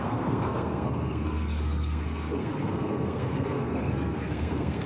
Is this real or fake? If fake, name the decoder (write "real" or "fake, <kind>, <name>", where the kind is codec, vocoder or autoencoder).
fake, codec, SNAC